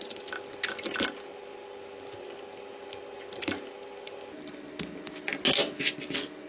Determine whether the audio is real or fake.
real